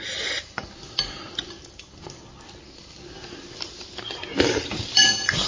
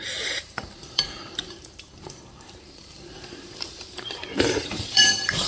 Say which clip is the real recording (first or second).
first